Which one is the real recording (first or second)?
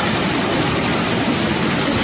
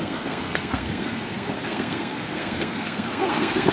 first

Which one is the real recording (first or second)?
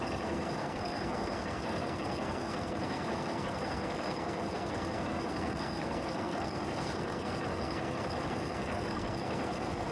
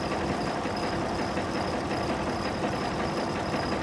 second